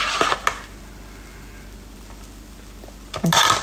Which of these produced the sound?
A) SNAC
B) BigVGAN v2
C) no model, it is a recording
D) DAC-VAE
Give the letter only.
C